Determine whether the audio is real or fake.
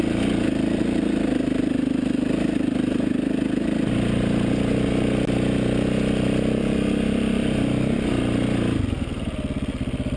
real